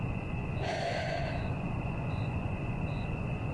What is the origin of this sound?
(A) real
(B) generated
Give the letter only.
B